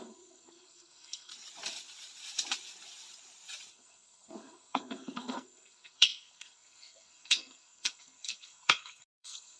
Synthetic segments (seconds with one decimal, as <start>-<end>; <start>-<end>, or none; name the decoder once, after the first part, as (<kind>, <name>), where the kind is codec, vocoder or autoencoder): 0.0-1.3 (codec, SNAC); 3.7-9.6